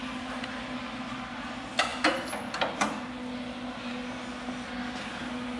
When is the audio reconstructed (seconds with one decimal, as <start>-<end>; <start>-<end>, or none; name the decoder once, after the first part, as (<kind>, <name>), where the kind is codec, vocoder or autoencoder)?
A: none